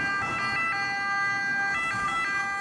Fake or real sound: real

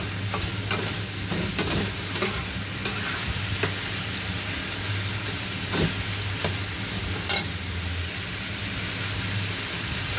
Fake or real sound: real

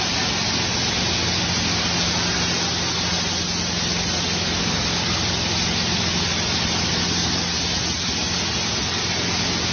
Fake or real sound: real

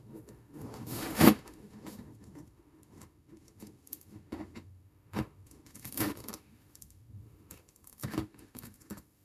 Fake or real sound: fake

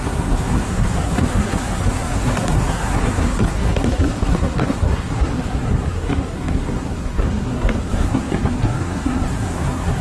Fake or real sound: fake